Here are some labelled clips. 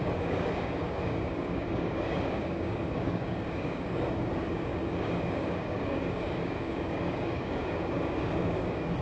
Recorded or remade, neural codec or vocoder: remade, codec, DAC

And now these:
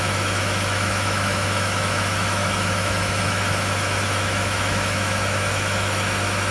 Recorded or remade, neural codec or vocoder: remade, autoencoder, DAC-VAE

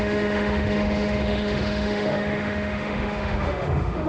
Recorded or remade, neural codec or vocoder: remade, autoencoder, DAC-VAE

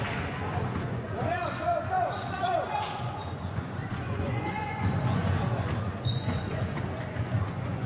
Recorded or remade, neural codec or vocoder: remade, vocoder, Vocos